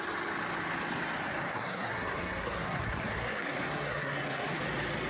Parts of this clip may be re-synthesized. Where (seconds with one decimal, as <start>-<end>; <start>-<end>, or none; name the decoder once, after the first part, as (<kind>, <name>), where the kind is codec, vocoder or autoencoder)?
1.5-4.6 (codec, SNAC)